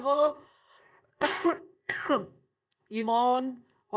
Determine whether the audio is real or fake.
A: fake